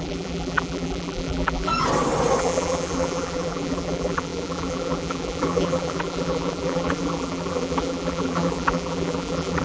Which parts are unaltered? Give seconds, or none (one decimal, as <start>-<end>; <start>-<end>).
1.7-2.4